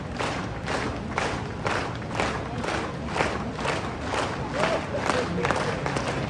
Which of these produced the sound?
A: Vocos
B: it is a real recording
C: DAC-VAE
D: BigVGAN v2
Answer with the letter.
B